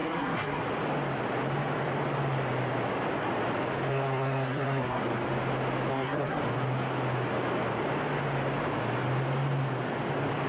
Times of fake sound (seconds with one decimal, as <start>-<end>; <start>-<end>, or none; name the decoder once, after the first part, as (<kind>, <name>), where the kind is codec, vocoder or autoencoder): 0.0-0.6 (codec, SNAC); 3.9-5.0; 5.9-6.4